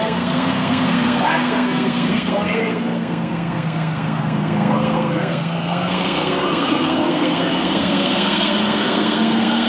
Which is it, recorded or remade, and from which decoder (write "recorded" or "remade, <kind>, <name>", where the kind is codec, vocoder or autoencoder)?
remade, codec, SNAC